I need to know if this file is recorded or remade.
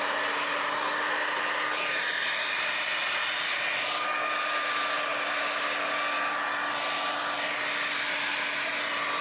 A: recorded